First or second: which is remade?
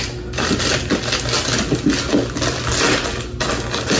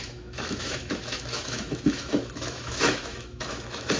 second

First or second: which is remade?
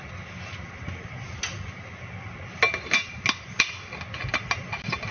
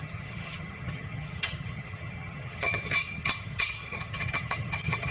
second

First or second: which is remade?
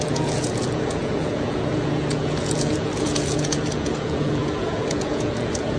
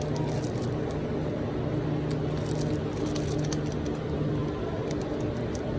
first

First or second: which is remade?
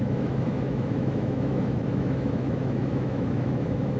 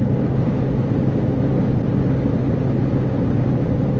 first